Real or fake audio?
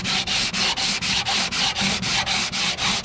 real